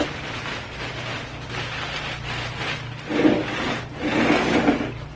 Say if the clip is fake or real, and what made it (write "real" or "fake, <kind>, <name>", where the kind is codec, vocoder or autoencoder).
real